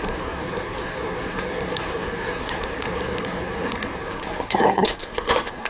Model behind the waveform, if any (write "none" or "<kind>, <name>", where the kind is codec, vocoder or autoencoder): codec, SNAC